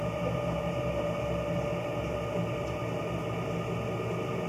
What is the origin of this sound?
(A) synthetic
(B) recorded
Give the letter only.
B